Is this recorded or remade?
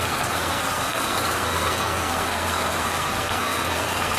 remade